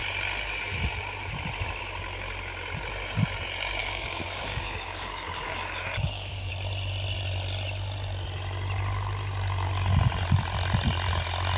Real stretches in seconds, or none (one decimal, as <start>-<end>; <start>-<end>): 0.0-3.8; 6.5-11.6